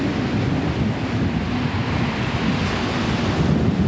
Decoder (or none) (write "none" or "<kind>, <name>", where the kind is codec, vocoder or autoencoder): none